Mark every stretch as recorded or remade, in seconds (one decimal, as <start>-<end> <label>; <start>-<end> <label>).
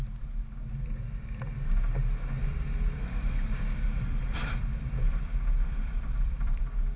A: 0.0-2.4 recorded; 2.4-6.6 remade; 6.6-7.0 recorded